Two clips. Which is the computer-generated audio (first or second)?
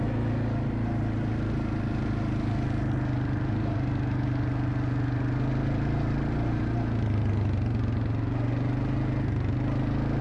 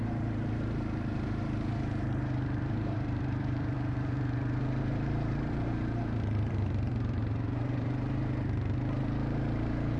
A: second